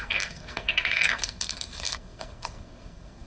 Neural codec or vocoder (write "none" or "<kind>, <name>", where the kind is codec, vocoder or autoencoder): codec, SNAC